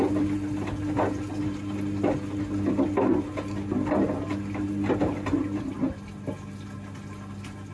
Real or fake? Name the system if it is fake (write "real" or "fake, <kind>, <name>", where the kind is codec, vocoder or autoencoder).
real